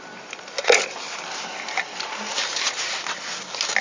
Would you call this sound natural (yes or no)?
yes